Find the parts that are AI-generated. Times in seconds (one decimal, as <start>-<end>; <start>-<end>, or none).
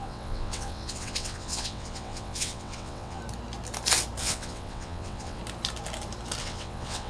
0.0-3.2; 4.2-5.4; 6.4-7.1